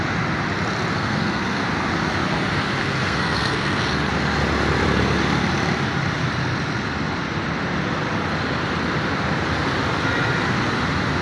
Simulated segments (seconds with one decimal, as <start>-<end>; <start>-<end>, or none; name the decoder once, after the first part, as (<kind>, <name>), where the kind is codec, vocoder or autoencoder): 0.9-1.6 (codec, SNAC); 2.8-4.1